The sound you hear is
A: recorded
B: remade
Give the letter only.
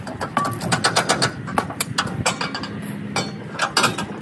A